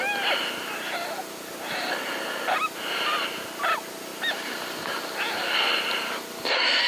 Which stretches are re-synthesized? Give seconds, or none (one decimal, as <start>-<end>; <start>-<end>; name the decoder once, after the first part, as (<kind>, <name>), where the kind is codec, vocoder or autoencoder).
none